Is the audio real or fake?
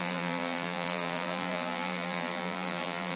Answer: fake